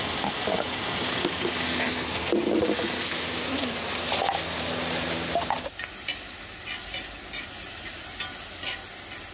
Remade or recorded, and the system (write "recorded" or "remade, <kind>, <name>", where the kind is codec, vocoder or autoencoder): recorded